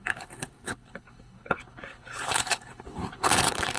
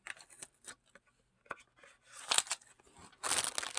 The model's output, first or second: first